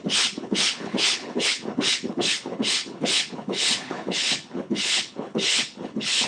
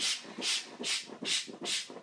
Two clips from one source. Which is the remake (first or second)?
first